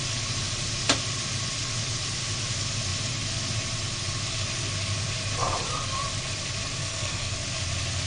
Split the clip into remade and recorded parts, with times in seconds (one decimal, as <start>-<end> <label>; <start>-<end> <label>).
0.0-6.8 recorded; 6.8-7.3 remade; 7.3-8.1 recorded